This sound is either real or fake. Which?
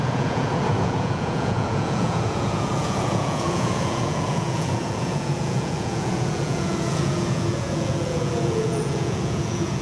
fake